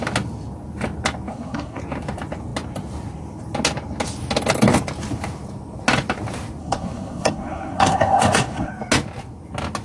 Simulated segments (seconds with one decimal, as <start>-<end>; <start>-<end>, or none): 1.3-1.8; 6.6-8.7